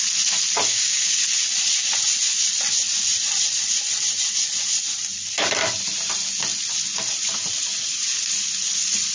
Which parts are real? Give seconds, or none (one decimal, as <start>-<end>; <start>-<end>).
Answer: 0.0-0.7; 1.2-9.1